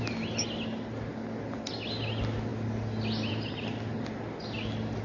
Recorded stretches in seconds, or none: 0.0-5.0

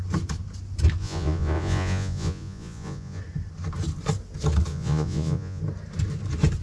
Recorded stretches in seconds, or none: 0.0-1.0; 3.2-4.7; 5.6-6.6

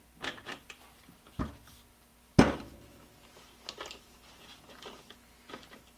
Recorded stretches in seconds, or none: 0.0-0.5; 1.1-6.0

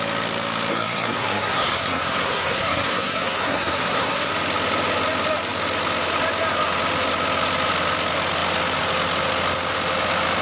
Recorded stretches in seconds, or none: 0.0-0.7; 4.3-10.4

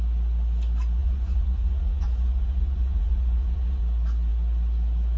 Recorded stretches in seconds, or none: 0.0-1.0; 3.8-5.2